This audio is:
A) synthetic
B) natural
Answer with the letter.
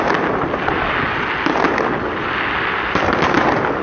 B